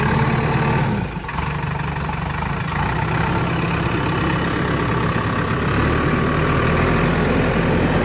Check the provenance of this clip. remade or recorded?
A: recorded